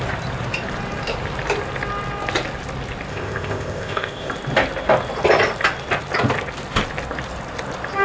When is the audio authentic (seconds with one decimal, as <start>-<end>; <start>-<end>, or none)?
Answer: 0.0-3.1; 4.3-8.0